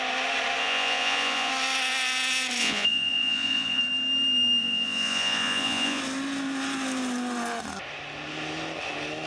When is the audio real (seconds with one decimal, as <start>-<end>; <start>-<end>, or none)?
0.0-0.6; 1.5-2.6; 3.8-4.6; 6.0-9.3